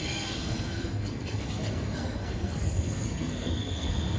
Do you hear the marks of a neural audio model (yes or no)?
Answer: yes